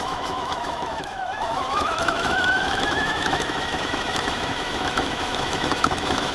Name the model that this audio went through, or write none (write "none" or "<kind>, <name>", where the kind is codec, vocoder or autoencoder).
autoencoder, DAC-VAE